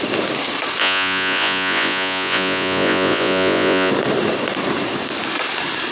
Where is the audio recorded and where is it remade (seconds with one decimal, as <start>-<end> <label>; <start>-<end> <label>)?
0.0-0.8 recorded; 0.8-3.9 remade; 3.9-5.9 recorded